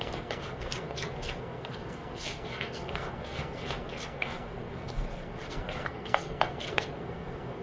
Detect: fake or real fake